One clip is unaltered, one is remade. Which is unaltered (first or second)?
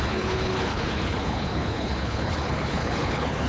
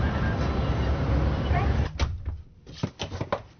second